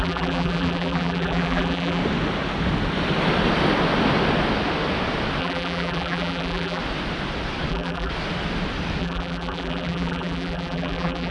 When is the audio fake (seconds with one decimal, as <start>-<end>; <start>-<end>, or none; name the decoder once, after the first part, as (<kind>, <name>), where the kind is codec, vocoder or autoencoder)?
0.0-2.0 (vocoder, BigVGAN v2); 5.4-6.8; 7.7-8.1; 9.0-11.3